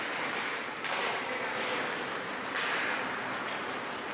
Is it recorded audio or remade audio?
recorded